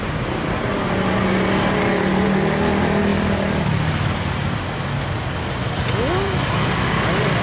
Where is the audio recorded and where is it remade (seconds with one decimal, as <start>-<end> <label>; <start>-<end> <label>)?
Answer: 0.0-7.4 recorded